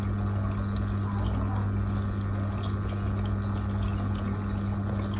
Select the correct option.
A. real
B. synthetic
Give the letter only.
A